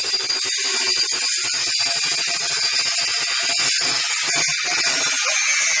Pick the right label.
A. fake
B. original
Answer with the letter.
B